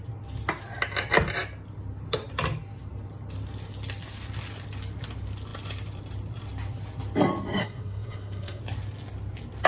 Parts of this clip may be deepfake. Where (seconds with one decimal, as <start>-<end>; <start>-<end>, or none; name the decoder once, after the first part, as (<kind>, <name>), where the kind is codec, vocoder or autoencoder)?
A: 7.6-8.6 (codec, SNAC)